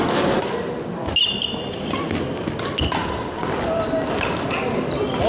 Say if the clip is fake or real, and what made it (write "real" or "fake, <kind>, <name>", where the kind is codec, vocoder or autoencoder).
real